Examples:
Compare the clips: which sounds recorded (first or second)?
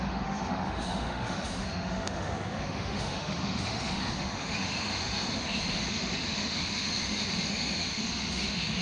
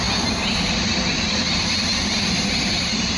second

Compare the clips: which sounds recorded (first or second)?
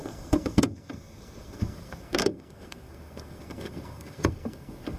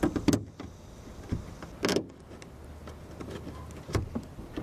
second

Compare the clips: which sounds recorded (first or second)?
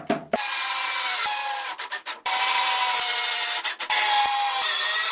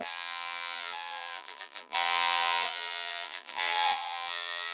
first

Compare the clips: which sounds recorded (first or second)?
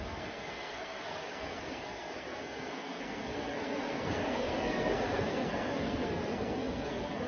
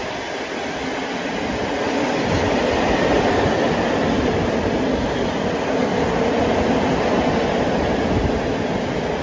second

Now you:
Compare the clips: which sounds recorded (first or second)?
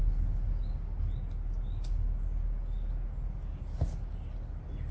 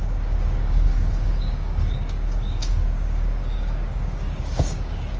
first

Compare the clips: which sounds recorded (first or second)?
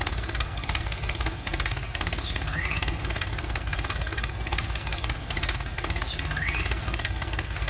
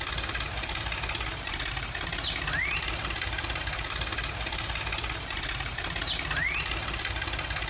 second